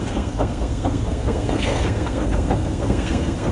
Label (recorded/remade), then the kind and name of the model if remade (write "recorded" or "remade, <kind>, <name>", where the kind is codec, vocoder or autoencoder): remade, codec, SNAC